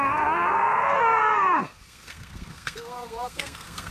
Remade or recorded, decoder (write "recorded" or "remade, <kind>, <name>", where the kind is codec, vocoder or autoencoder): remade, codec, SNAC